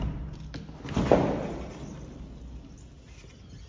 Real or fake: real